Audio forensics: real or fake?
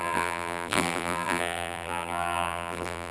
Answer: fake